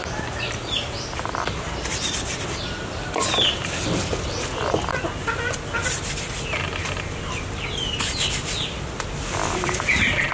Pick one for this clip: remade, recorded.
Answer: recorded